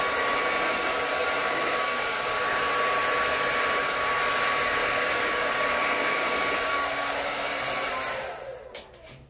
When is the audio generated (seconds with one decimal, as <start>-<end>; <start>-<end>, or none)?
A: 1.4-2.6; 4.8-7.6